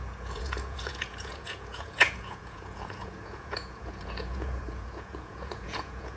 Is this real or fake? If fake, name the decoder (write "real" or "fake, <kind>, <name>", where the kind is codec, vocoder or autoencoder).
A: fake, vocoder, Vocos